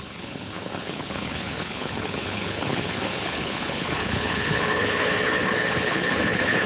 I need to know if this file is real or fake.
fake